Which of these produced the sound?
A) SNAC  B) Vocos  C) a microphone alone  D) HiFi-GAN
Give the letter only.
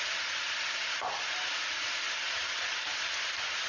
C